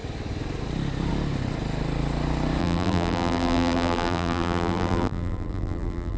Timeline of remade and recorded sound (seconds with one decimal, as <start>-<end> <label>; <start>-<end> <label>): 0.0-2.6 recorded; 2.6-6.2 remade